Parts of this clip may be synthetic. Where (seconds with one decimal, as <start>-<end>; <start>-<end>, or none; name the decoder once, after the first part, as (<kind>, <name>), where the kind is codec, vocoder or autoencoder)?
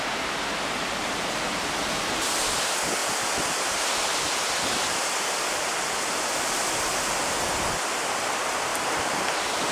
none